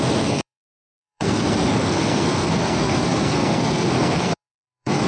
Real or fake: fake